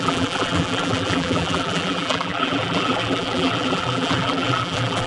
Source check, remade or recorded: remade